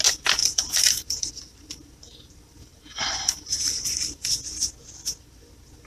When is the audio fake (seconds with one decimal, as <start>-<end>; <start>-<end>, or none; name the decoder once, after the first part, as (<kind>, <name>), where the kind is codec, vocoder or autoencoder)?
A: 0.4-1.3 (vocoder, BigVGAN v2); 2.7-4.3